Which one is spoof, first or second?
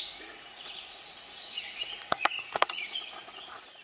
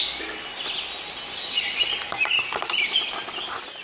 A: first